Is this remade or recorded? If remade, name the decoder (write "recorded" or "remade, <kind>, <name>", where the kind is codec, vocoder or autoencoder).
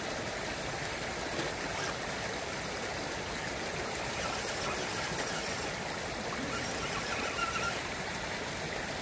recorded